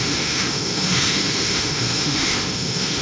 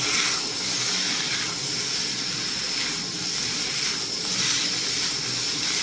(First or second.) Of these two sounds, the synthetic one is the first